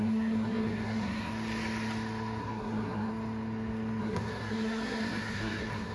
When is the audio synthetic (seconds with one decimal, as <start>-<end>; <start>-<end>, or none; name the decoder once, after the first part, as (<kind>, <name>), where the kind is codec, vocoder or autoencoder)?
0.0-1.3 (codec, SNAC); 2.4-3.1; 4.0-5.9